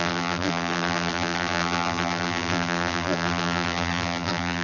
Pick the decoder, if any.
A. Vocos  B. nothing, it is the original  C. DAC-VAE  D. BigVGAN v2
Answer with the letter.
D